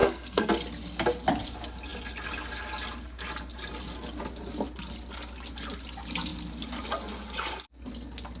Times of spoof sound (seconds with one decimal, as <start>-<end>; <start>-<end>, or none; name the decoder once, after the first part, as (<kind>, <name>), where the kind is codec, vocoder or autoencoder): 0.0-0.5 (codec, SNAC)